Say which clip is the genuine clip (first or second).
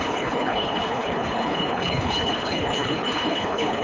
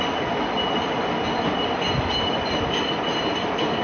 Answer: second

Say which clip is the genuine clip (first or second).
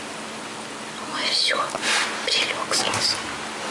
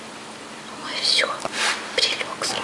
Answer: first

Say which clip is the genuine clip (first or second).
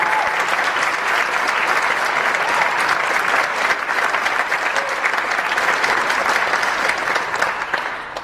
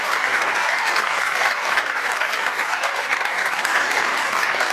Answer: first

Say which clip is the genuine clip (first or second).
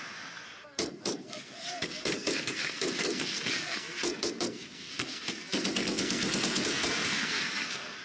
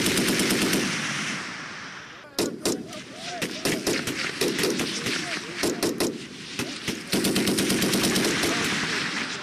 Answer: second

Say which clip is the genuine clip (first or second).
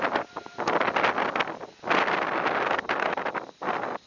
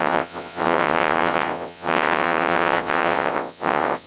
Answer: first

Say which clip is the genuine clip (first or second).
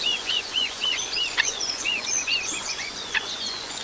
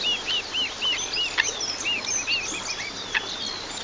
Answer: second